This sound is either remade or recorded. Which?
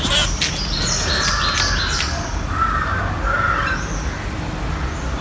recorded